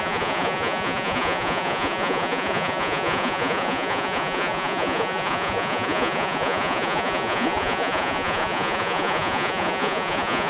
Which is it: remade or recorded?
remade